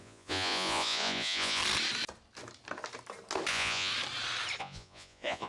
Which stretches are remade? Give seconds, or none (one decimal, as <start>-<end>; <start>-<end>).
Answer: 0.0-1.6; 3.5-3.9; 4.6-5.5